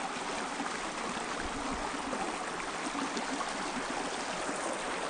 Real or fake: real